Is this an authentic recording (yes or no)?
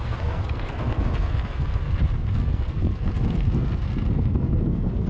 no